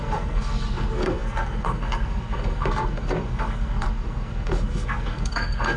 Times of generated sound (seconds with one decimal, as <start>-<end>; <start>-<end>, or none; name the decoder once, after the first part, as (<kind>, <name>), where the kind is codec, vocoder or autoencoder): 0.0-5.8 (codec, SNAC)